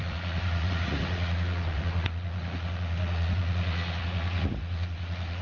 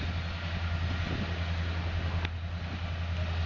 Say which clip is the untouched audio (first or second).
second